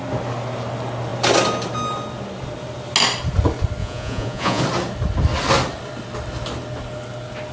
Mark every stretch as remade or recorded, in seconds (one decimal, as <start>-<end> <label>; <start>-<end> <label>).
0.0-3.8 recorded; 3.8-4.6 remade; 4.6-7.5 recorded